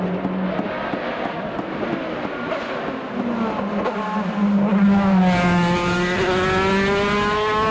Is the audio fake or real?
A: real